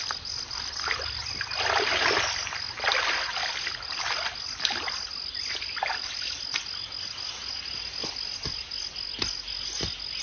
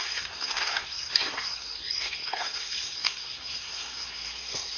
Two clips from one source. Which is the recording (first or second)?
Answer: first